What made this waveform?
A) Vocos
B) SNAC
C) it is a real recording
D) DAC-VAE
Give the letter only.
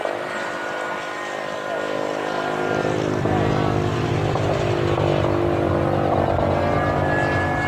C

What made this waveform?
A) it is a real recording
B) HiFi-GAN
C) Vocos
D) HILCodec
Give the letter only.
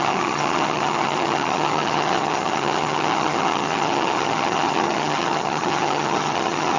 B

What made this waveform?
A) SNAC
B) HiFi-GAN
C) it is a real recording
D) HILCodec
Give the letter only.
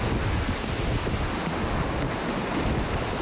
C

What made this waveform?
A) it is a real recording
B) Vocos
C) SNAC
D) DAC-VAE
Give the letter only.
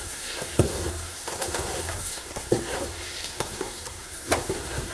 C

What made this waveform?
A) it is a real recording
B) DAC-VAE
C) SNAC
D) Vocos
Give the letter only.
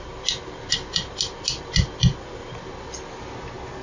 A